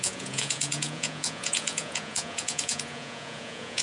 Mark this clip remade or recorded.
remade